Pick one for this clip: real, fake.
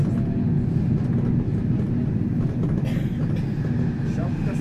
real